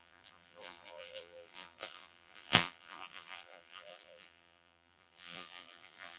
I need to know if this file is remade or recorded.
remade